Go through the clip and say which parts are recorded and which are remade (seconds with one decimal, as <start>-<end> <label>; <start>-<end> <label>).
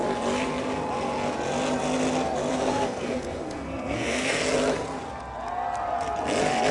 0.0-2.5 recorded; 2.5-4.4 remade; 4.4-6.7 recorded